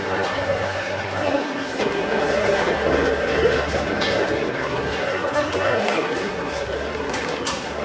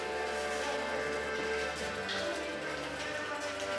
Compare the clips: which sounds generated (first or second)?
first